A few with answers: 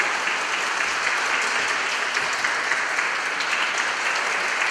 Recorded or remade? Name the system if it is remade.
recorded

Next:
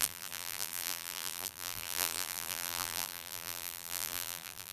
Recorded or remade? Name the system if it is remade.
remade, vocoder, BigVGAN v2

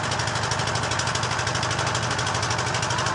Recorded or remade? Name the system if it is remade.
recorded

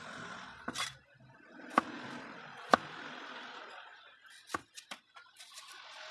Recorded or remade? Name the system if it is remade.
recorded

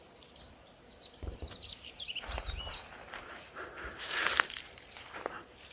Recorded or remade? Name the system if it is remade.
remade, vocoder, BigVGAN v2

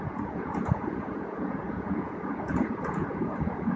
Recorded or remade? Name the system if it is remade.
remade, vocoder, Vocos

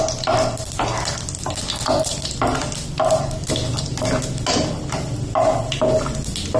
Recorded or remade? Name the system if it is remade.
recorded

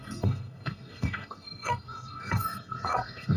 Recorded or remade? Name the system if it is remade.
remade, codec, SNAC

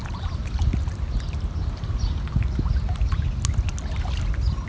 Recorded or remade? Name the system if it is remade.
recorded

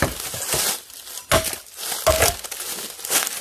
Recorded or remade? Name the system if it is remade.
recorded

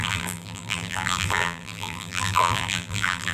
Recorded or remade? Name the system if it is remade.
remade, vocoder, BigVGAN v2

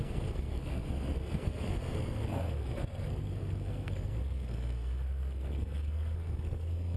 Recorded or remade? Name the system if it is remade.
remade, codec, SNAC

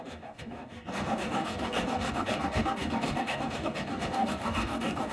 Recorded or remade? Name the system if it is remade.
remade, codec, DAC